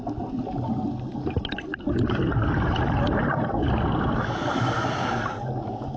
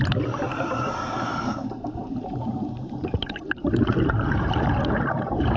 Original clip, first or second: first